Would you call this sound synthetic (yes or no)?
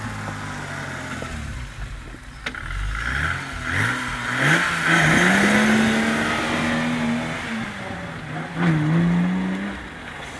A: no